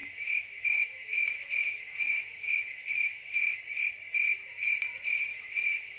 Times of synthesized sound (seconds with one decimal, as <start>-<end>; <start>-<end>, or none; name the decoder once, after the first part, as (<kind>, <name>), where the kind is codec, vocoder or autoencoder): 0.0-3.6 (autoencoder, DAC-VAE); 5.3-6.0